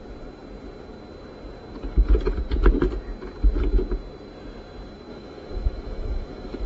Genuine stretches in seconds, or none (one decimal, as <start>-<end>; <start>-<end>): 0.0-5.1